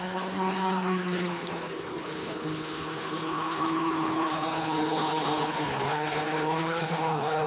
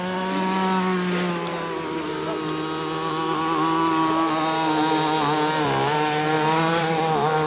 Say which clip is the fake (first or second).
first